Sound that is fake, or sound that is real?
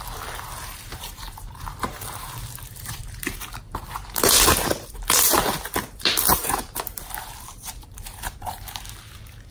fake